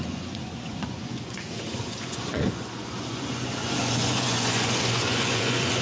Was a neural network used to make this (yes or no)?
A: yes